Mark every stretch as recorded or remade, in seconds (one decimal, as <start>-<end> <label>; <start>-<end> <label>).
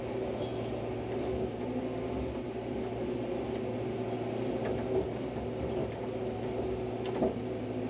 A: 0.0-7.9 recorded